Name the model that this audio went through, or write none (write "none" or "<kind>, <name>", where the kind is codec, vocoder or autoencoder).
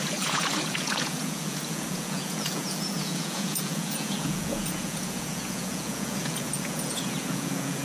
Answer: vocoder, Vocos